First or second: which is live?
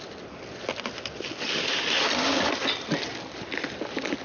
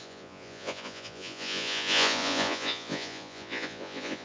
first